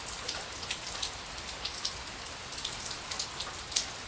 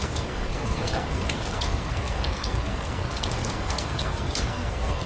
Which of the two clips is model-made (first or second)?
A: second